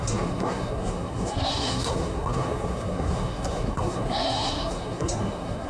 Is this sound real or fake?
fake